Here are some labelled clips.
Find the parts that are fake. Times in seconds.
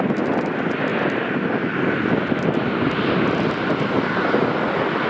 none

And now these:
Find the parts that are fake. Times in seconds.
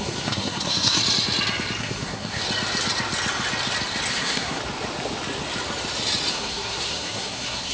0.0-1.0 (codec, SNAC); 1.8-2.4; 4.1-4.6; 6.3-7.7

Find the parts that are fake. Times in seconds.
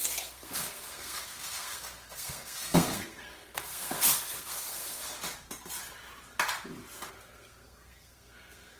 0.0-5.0 (codec, SNAC); 7.1-8.8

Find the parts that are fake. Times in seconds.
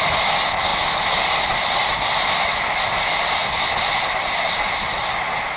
none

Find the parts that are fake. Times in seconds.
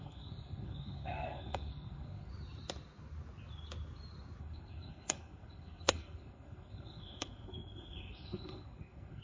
0.0-2.3 (codec, SNAC); 4.4-9.2